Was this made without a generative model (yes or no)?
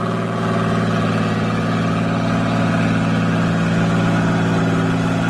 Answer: yes